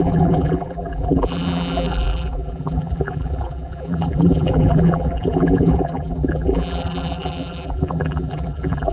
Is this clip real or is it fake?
fake